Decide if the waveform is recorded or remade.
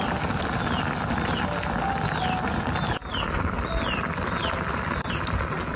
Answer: recorded